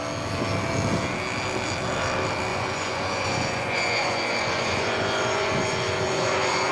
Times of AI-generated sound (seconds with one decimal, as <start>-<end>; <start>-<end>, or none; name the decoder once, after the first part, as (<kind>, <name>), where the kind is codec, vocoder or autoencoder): 2.5-6.7 (vocoder, Vocos)